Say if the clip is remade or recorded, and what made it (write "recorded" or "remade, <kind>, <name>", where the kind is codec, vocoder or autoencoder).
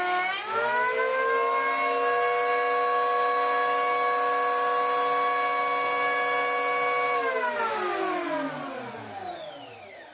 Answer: recorded